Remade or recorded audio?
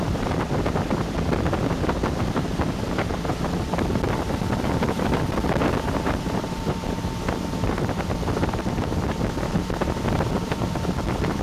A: remade